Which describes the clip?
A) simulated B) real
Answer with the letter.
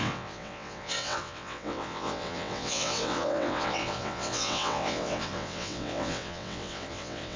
A